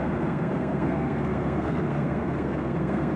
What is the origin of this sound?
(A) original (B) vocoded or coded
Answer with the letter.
B